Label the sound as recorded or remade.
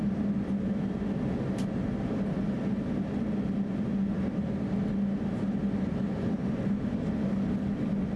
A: recorded